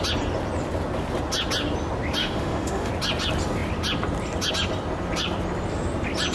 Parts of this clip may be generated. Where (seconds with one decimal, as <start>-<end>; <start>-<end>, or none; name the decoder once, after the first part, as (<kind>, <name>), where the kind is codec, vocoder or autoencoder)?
2.2-2.9 (autoencoder, DAC-VAE)